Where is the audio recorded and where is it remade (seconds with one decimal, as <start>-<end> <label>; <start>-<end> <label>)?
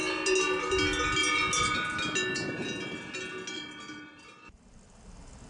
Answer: 0.0-5.5 recorded